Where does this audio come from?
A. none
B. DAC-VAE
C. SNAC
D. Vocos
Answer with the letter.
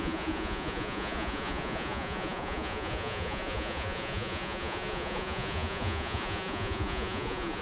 D